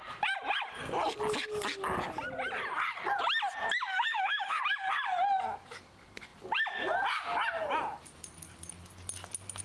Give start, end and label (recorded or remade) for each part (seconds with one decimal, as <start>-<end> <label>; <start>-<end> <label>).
0.0-3.9 recorded; 3.9-4.6 remade; 4.6-9.6 recorded